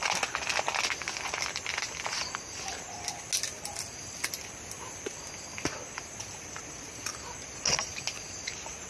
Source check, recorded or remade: recorded